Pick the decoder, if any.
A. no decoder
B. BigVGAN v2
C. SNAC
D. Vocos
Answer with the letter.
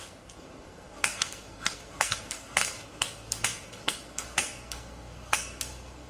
C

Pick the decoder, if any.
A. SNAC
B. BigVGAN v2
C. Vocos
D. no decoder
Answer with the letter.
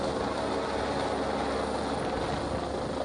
D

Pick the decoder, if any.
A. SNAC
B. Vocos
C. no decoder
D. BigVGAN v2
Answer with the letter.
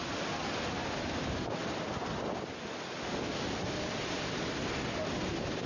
C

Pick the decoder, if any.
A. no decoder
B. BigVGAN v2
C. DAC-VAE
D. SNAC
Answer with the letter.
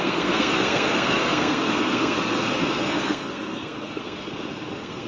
D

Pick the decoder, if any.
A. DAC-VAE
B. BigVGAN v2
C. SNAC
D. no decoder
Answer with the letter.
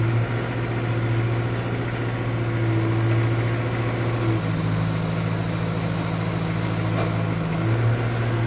D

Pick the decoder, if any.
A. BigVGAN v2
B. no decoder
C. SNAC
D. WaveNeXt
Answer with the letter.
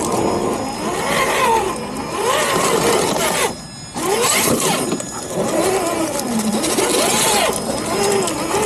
B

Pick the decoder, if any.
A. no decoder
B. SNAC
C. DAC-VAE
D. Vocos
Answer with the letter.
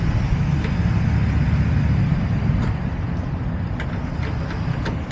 A